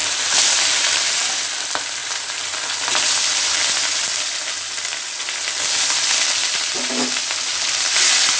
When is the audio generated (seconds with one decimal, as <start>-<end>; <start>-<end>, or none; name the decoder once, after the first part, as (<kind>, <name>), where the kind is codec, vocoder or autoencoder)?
0.0-1.3 (vocoder, BigVGAN v2); 2.0-2.5

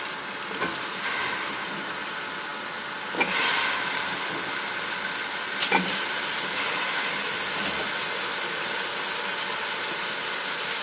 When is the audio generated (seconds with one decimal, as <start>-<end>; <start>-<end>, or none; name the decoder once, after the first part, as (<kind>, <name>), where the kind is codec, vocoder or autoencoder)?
none

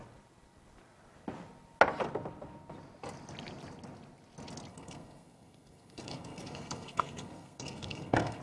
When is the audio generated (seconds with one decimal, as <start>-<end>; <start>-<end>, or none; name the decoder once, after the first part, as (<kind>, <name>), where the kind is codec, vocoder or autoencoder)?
4.7-8.4 (codec, SNAC)

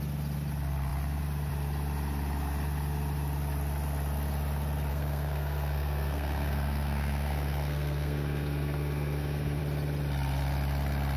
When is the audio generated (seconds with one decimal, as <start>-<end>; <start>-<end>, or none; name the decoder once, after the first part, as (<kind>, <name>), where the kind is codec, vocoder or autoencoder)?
4.9-9.6 (codec, SNAC)

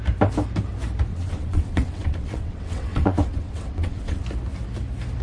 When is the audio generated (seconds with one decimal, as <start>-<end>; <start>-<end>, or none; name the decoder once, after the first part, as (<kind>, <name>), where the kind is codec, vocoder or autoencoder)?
1.1-4.2 (vocoder, WaveNeXt)

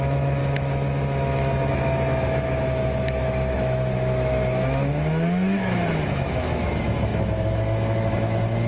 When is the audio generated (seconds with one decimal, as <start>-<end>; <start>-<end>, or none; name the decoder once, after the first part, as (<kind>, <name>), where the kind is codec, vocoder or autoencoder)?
0.0-0.4 (autoencoder, DAC-VAE); 1.7-8.7

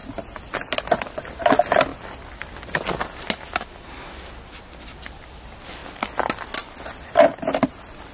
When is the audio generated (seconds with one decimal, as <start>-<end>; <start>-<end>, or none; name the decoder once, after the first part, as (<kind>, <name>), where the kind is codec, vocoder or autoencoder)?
0.0-1.2 (vocoder, BigVGAN v2)

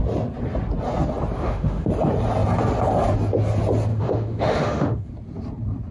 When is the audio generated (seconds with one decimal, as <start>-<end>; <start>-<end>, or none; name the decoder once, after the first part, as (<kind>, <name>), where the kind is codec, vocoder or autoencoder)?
1.4-1.9 (autoencoder, DAC-VAE); 3.9-5.1